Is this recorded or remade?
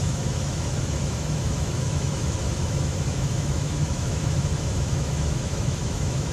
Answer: remade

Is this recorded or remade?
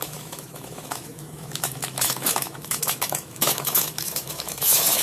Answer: remade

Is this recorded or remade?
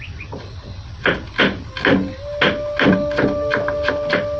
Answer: recorded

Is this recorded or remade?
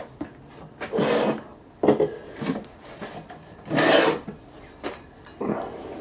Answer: recorded